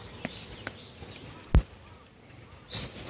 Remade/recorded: recorded